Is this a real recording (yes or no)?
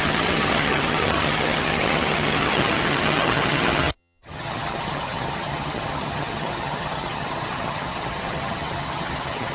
no